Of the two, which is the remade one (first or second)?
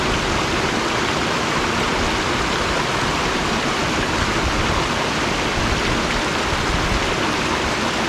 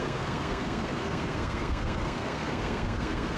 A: second